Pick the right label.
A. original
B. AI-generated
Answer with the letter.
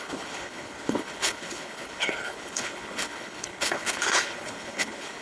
B